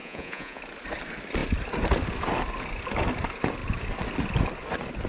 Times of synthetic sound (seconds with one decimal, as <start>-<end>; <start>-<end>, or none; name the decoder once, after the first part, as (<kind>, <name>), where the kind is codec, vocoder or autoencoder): 0.0-0.6 (vocoder, Vocos)

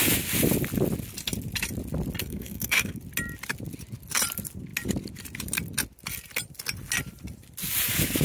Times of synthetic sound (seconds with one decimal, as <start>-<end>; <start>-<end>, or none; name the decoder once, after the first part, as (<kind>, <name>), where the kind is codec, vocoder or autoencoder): 2.2-3.0 (codec, SNAC)

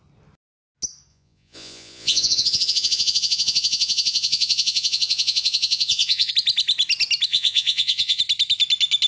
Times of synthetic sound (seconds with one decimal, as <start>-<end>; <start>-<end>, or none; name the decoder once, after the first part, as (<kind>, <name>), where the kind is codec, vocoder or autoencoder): 1.1-6.3 (vocoder, Vocos); 7.3-8.2

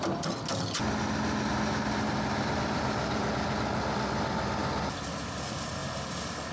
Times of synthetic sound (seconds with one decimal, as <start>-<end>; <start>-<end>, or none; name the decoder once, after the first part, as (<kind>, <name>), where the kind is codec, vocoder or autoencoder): none

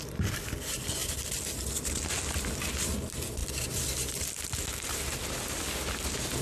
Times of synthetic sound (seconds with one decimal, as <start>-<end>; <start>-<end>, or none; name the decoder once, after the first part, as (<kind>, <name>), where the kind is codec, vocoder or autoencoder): none

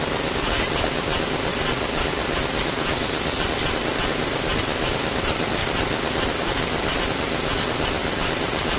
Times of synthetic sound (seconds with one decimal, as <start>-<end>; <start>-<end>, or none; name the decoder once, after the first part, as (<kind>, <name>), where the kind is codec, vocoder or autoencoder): none

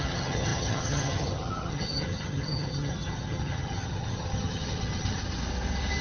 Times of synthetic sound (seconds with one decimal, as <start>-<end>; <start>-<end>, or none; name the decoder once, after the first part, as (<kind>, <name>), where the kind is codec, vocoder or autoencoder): 0.0-5.2 (vocoder, HiFi-GAN)